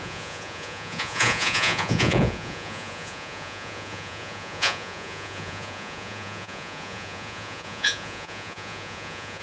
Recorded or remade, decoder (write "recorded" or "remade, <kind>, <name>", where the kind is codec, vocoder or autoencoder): remade, vocoder, Vocos